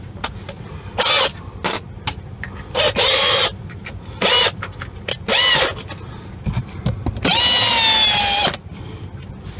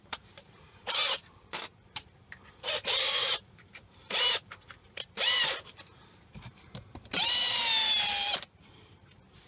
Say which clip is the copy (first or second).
second